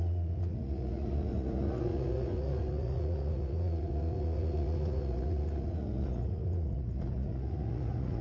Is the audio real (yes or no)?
no